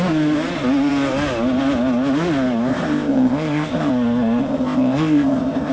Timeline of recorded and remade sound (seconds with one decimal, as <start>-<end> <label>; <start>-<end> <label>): 0.0-2.7 recorded; 2.7-3.9 remade; 3.9-4.4 recorded; 4.4-5.7 remade